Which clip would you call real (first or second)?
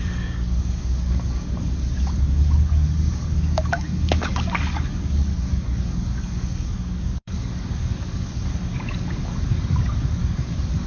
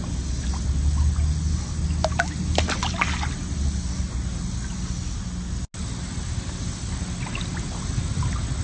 second